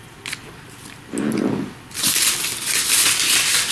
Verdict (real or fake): real